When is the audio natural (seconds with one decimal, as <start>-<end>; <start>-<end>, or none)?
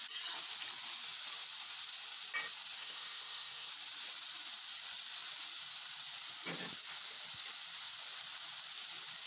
0.0-2.8; 3.7-9.3